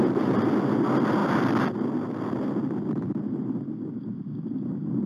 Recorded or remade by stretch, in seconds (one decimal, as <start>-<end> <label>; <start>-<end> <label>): 0.0-5.1 recorded